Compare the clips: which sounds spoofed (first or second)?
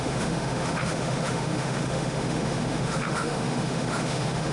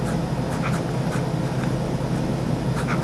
first